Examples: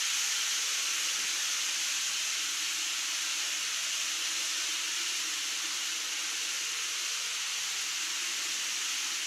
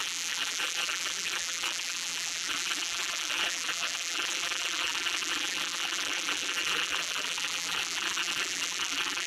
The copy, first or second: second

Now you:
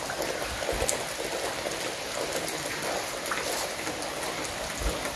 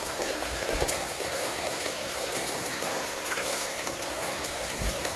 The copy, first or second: second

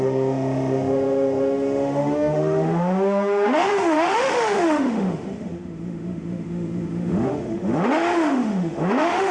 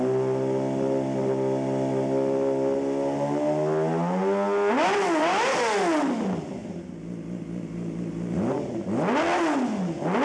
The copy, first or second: first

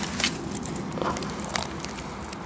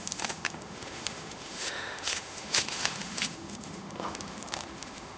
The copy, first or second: second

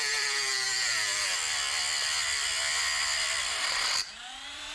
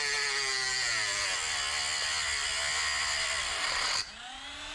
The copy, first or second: first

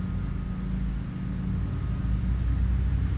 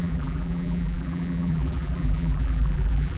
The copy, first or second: second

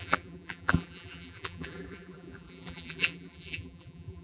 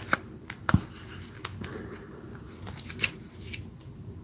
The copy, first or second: first